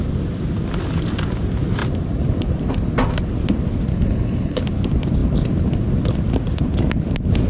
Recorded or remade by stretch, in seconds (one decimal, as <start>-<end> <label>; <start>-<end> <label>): 0.0-3.9 recorded; 3.9-4.6 remade; 4.6-7.5 recorded